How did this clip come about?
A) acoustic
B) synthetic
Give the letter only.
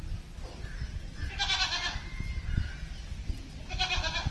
A